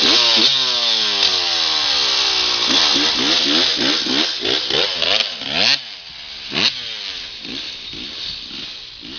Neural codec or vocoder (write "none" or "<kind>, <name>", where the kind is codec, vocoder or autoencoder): none